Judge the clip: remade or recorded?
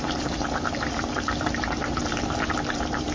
remade